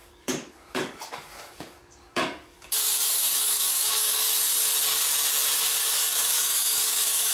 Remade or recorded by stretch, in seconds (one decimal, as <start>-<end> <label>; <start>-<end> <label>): 0.0-4.4 remade; 4.4-5.8 recorded; 5.8-7.3 remade